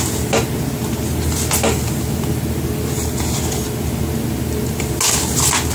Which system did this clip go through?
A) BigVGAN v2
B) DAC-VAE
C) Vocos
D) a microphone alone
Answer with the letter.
D